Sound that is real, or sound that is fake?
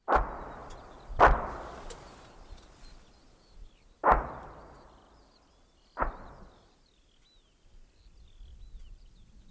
real